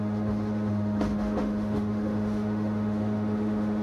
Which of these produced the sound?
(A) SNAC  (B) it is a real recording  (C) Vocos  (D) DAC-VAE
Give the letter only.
D